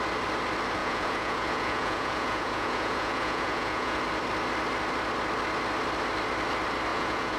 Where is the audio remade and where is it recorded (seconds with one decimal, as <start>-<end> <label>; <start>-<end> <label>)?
0.0-0.8 recorded; 0.8-4.0 remade; 4.0-6.9 recorded; 6.9-7.4 remade